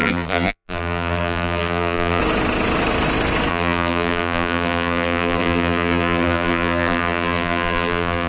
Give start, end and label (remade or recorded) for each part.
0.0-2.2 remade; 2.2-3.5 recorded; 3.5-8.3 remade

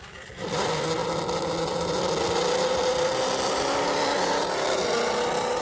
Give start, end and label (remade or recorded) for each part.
0.0-3.1 recorded; 3.1-5.6 remade

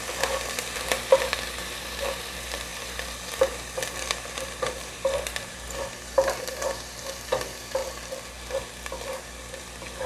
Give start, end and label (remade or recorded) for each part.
0.0-2.7 remade; 2.7-3.4 recorded; 3.4-7.8 remade; 7.8-9.6 recorded; 9.6-10.1 remade